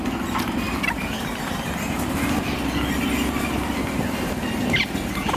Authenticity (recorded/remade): recorded